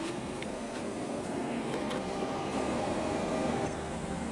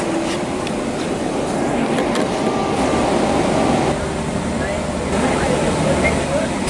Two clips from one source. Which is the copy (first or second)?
first